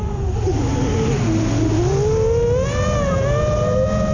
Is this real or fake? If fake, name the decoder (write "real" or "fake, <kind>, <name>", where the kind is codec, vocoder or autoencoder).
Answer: real